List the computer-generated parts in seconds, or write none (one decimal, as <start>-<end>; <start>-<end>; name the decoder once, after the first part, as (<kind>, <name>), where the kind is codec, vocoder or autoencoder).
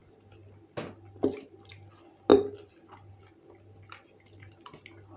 none